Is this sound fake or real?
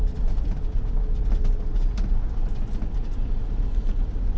real